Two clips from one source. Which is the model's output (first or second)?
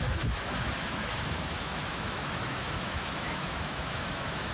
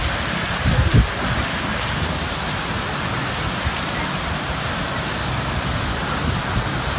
first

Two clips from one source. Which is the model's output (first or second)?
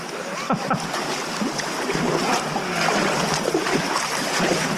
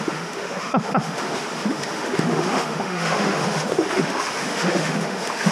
second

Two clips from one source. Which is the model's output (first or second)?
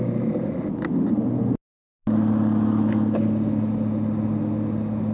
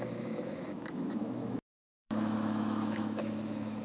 second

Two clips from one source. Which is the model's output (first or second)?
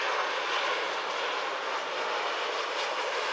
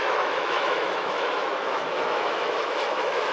second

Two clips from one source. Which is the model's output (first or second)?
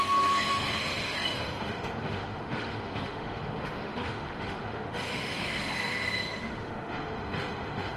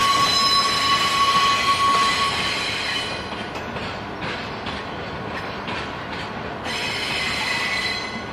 first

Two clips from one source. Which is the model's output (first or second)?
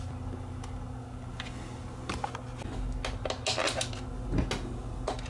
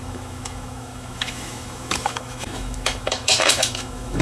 second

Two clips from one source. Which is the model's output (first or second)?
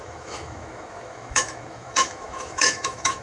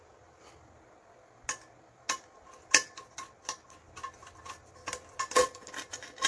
first